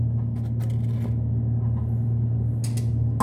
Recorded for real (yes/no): yes